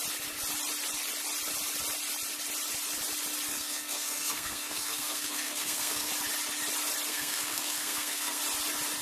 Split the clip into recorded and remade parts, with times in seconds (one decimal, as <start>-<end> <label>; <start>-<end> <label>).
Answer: 0.0-3.5 recorded; 3.5-6.1 remade; 6.1-7.1 recorded; 7.1-8.4 remade; 8.4-9.0 recorded